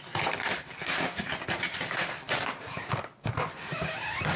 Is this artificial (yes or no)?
yes